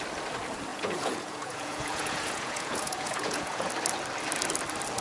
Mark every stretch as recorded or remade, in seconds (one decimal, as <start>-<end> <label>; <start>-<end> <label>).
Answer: 0.0-0.7 recorded; 0.7-3.7 remade; 3.7-5.0 recorded

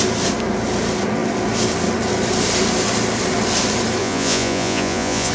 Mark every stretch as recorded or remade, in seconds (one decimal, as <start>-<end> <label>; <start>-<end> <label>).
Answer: 0.0-4.0 recorded; 4.0-5.3 remade

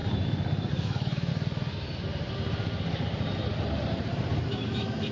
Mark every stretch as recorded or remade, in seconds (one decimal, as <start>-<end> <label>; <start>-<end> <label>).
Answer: 0.0-0.7 recorded; 0.7-1.3 remade; 1.3-4.4 recorded; 4.4-5.1 remade

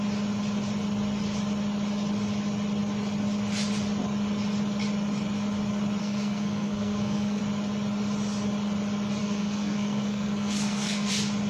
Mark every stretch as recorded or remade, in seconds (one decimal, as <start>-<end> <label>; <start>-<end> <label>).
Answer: 0.0-6.0 recorded; 6.0-7.4 remade; 7.4-9.2 recorded; 9.2-11.1 remade; 11.1-11.5 recorded